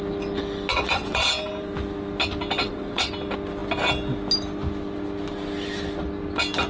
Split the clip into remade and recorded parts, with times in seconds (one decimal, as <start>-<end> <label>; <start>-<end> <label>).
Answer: 0.0-0.7 recorded; 0.7-1.3 remade; 1.3-2.6 recorded; 2.6-3.1 remade; 3.1-6.7 recorded